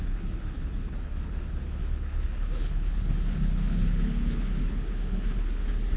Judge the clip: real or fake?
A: fake